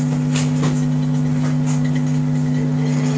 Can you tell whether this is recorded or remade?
recorded